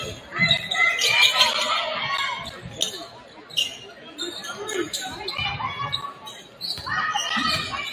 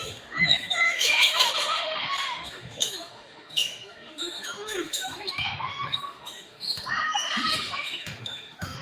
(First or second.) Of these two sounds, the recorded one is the first